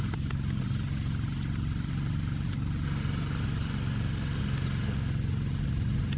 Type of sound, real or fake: real